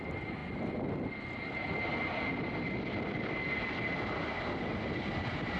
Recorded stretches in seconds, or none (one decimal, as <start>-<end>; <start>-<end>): 0.0-5.6